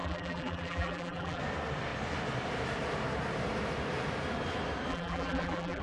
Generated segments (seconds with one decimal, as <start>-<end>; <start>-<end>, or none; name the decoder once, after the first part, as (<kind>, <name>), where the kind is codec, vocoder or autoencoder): 0.0-1.4 (vocoder, BigVGAN v2); 4.9-5.8